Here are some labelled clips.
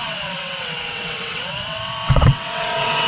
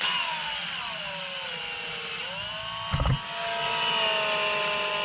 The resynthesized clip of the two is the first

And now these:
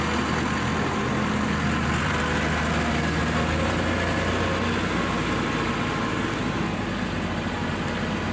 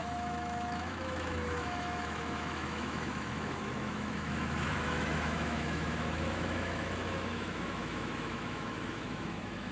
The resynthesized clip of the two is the second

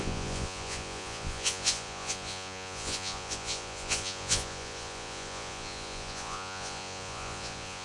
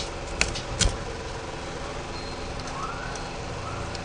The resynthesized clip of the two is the first